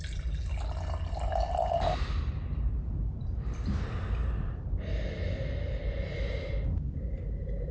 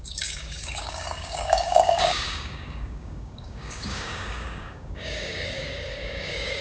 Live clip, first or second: first